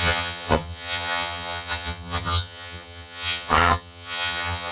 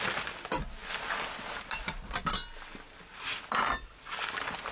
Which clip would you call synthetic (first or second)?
first